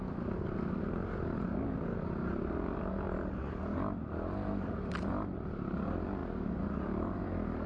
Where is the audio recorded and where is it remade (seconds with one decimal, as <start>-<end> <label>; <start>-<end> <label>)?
0.0-7.7 recorded